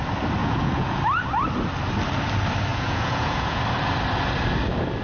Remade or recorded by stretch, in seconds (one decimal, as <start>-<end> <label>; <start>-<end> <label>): 0.0-0.4 recorded; 0.4-1.0 remade; 1.0-2.7 recorded; 2.7-3.6 remade; 3.6-5.0 recorded